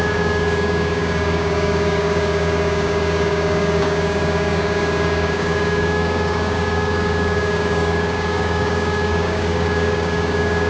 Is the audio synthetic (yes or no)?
yes